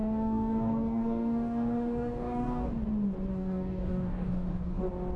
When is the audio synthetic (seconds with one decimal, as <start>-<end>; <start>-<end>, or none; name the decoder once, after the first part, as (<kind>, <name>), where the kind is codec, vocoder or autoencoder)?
0.0-2.7 (codec, DAC); 3.3-4.8